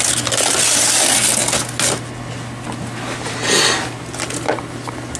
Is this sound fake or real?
real